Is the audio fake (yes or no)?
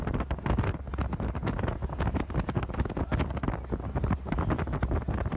no